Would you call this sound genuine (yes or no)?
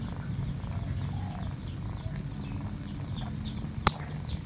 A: yes